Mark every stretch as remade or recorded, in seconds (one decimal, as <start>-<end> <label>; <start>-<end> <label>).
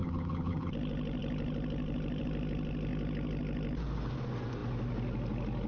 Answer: 0.0-0.7 remade; 0.7-5.7 recorded